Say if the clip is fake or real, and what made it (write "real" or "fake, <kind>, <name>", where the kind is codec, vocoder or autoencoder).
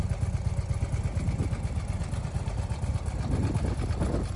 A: real